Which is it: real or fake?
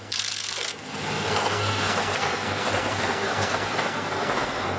fake